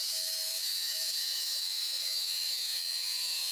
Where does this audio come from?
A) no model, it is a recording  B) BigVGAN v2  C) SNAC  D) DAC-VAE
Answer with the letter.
D